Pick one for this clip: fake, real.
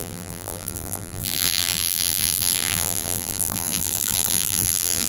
fake